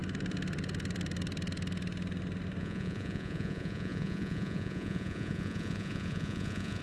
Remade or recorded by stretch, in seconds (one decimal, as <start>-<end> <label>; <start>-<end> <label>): 0.0-2.6 recorded; 2.6-6.8 remade